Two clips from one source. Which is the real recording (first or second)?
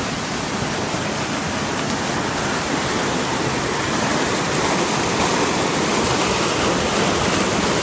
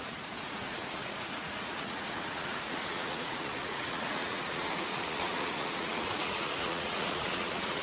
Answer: first